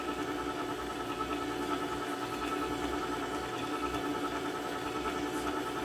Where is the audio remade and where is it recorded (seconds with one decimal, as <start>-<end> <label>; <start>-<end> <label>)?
0.0-1.3 remade; 1.3-2.4 recorded; 2.4-5.8 remade